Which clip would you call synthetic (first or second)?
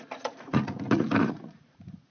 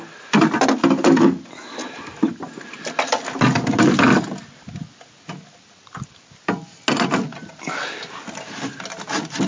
first